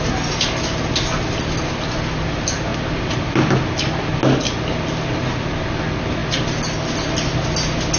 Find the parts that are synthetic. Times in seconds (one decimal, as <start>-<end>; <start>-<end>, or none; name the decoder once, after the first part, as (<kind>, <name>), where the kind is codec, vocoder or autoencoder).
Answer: none

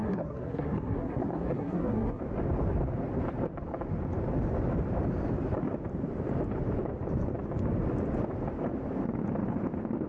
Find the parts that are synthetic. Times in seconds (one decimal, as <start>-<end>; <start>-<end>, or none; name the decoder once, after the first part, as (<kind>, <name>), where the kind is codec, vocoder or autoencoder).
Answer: 0.0-2.2 (codec, SNAC)